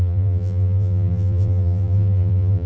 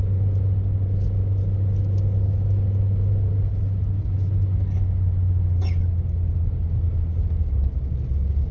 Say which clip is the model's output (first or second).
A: first